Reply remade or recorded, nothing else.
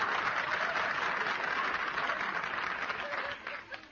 recorded